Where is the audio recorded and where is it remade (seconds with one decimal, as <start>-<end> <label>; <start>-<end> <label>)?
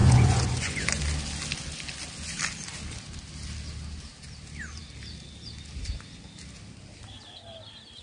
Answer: 0.0-1.0 remade; 1.0-8.0 recorded